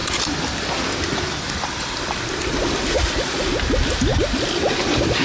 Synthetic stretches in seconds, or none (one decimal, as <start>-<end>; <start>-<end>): 0.0-3.1